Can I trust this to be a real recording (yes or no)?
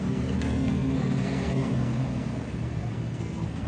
no